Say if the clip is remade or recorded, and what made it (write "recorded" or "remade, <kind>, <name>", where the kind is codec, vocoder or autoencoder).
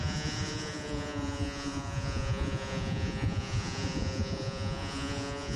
remade, vocoder, Vocos